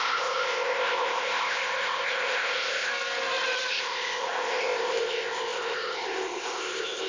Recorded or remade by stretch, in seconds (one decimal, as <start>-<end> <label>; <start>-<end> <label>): 0.0-2.9 remade; 2.9-3.7 recorded; 3.7-7.1 remade